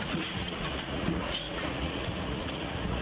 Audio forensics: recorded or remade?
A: remade